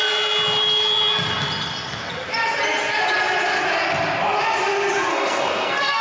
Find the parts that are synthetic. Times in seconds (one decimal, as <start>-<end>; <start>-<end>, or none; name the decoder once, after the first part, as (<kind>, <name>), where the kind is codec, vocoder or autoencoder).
5.1-6.0 (codec, SNAC)

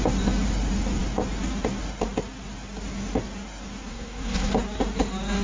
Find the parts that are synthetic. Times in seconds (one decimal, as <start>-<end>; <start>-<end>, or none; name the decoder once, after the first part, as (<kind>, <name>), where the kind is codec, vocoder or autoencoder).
3.9-4.5 (codec, SNAC)

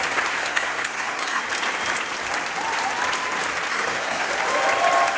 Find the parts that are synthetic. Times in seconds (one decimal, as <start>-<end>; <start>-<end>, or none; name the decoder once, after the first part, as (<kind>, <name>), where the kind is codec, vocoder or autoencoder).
0.4-1.4 (codec, SNAC); 3.7-4.3